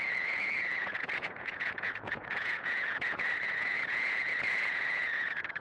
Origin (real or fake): fake